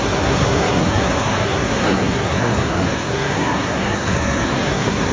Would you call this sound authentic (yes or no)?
no